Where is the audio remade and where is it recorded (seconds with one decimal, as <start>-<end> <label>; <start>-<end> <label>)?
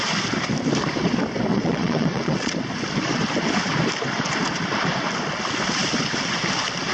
0.0-1.5 recorded; 1.5-2.5 remade; 2.5-6.9 recorded